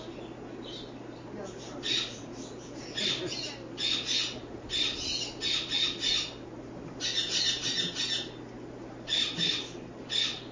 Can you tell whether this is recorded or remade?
recorded